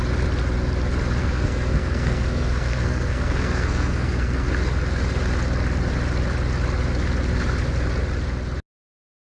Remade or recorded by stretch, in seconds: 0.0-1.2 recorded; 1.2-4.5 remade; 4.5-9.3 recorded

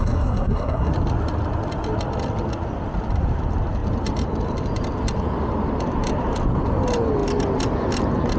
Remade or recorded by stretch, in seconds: 0.0-0.9 remade; 0.9-8.4 recorded

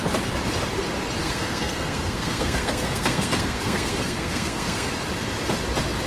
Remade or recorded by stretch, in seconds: 0.0-1.2 recorded; 1.2-4.9 remade; 4.9-6.1 recorded

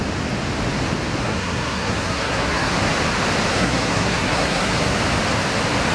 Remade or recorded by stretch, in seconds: 0.0-1.2 recorded; 1.2-2.7 remade; 2.7-3.5 recorded; 3.5-5.0 remade; 5.0-5.9 recorded

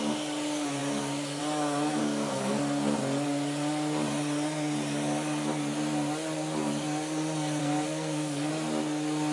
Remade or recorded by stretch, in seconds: 0.0-2.0 recorded; 2.0-2.6 remade; 2.6-7.6 recorded; 7.6-8.5 remade; 8.5-9.3 recorded